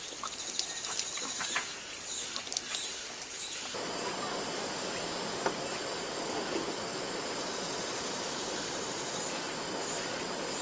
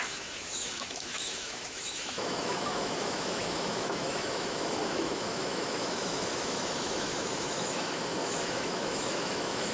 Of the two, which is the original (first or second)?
first